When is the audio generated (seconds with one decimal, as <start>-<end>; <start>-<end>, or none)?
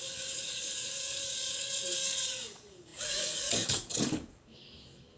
0.0-5.2